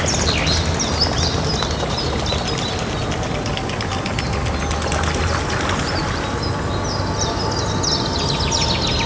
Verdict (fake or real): real